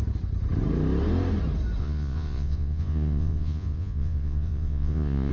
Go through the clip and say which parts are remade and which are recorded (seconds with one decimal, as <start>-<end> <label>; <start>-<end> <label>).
0.0-1.8 recorded; 1.8-5.3 remade